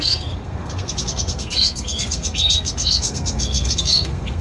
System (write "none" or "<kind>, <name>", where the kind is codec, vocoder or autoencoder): codec, SNAC